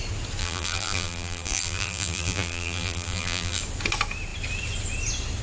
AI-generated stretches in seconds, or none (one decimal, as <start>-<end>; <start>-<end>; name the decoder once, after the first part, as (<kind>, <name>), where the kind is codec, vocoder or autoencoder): 0.4-3.6 (vocoder, BigVGAN v2)

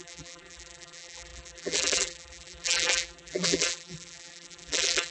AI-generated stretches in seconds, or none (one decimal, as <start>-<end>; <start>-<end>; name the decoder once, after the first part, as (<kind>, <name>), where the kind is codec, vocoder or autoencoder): 0.0-5.1 (vocoder, BigVGAN v2)

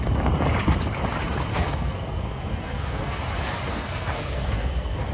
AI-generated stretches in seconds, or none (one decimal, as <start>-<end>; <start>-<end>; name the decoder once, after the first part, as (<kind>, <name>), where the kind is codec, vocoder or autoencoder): 1.5-3.2 (codec, SNAC); 3.7-5.1

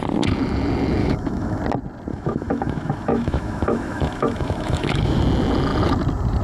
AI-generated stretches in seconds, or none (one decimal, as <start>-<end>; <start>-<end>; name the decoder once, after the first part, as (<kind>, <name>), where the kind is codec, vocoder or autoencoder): 1.0-1.6 (autoencoder, DAC-VAE); 2.1-5.2

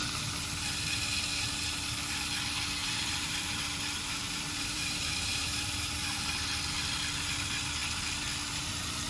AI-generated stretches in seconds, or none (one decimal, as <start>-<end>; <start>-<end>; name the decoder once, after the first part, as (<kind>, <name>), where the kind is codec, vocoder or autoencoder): 2.8-6.3 (vocoder, BigVGAN v2)

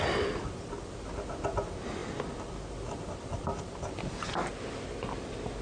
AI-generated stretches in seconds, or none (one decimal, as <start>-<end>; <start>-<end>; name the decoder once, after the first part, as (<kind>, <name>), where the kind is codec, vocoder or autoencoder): none